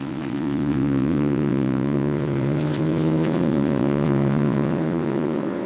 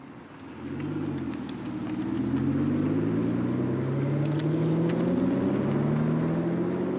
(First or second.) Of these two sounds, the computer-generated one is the first